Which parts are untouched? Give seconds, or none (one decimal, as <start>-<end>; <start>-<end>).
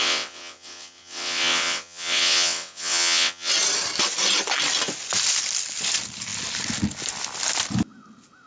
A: 3.5-8.5